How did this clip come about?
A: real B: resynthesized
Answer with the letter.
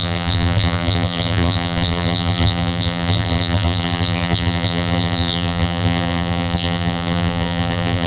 B